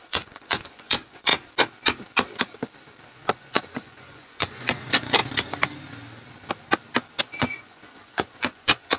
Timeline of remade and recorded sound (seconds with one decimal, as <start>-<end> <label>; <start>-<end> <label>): 0.0-1.3 remade; 1.3-3.1 recorded; 3.1-5.2 remade; 5.2-7.2 recorded; 7.2-9.0 remade